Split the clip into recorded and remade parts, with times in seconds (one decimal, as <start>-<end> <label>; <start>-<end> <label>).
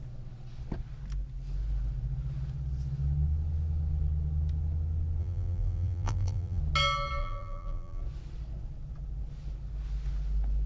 0.0-5.2 recorded; 5.2-6.6 remade; 6.6-7.2 recorded; 7.2-8.0 remade; 8.0-10.7 recorded